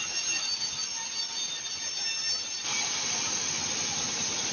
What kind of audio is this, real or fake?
real